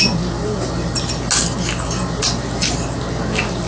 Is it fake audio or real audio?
real